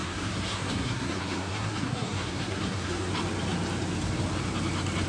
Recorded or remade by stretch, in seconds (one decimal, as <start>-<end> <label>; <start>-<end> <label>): 0.0-3.1 remade; 3.1-5.1 recorded